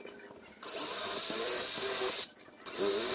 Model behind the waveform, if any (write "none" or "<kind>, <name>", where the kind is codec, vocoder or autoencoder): none